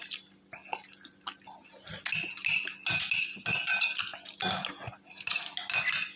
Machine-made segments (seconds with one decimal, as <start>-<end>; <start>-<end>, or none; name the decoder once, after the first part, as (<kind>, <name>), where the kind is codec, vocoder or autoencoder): none